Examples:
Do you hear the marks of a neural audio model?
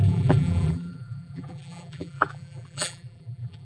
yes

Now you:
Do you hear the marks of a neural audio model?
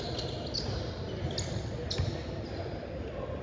no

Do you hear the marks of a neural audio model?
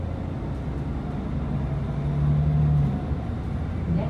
no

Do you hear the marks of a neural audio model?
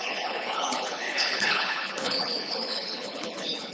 yes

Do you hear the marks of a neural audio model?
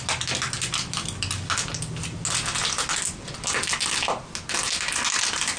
no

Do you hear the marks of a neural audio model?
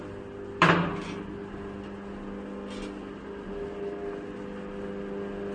no